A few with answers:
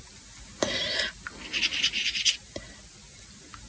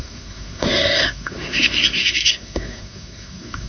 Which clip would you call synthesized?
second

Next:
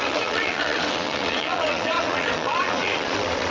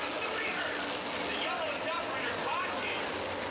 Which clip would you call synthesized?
first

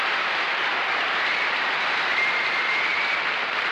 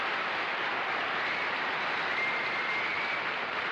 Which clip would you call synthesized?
first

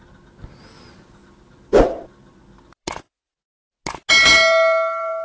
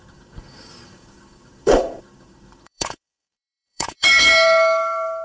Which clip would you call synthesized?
second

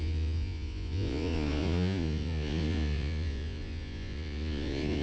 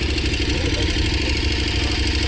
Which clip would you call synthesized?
first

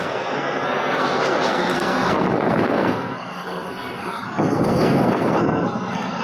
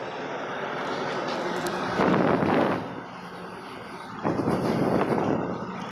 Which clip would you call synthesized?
first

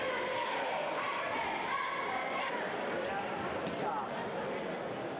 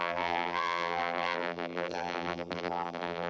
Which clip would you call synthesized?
second